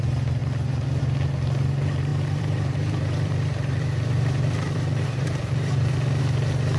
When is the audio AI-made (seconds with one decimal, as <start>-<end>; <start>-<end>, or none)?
2.1-6.2